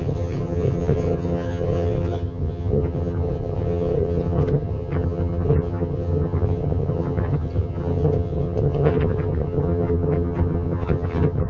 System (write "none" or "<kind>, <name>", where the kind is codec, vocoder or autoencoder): vocoder, HiFi-GAN